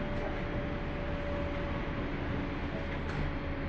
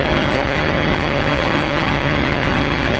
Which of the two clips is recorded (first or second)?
first